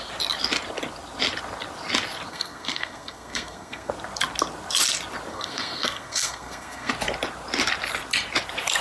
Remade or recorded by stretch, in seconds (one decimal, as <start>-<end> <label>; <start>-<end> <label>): 0.0-2.3 recorded; 2.3-3.9 remade; 3.9-5.3 recorded; 5.3-6.9 remade; 6.9-8.8 recorded